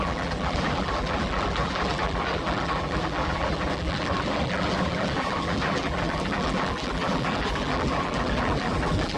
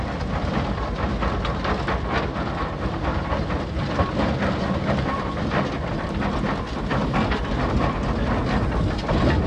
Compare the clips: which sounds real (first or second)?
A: second